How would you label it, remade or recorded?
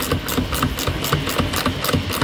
recorded